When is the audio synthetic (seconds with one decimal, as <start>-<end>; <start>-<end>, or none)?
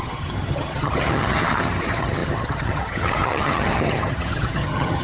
0.0-5.0